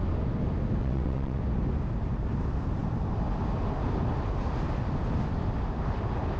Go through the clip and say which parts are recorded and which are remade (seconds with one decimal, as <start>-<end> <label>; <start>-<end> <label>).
0.0-0.8 recorded; 0.8-1.4 remade; 1.4-6.4 recorded